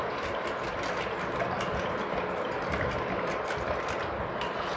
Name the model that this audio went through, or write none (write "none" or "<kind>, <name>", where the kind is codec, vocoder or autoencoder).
none